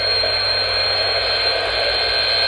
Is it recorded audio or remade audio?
recorded